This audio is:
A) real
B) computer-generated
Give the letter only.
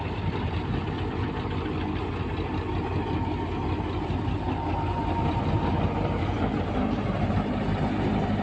A